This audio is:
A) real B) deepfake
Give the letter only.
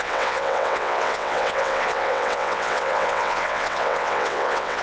B